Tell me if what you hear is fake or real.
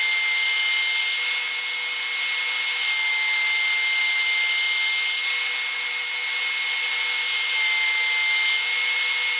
real